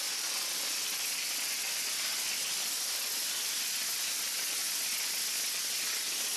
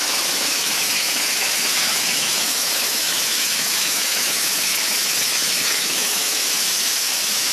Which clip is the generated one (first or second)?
second